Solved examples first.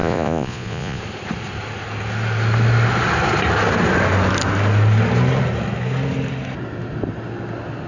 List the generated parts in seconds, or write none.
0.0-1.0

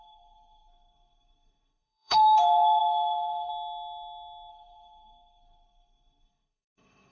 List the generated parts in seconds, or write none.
0.0-3.5; 4.5-7.1

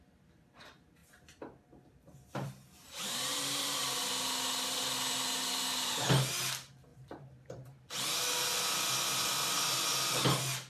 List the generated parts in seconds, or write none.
1.0-3.8; 6.9-7.9

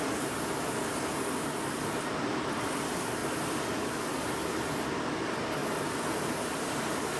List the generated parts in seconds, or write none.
none

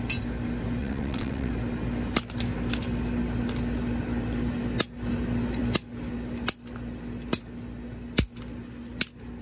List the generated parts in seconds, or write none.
0.8-1.5

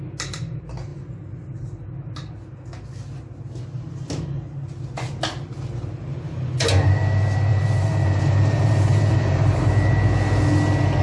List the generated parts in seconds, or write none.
7.5-9.7

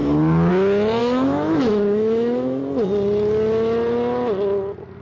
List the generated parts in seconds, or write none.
1.0-2.6